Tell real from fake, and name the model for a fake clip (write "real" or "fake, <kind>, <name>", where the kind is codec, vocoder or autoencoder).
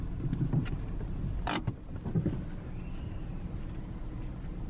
real